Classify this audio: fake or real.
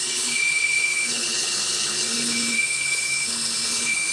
fake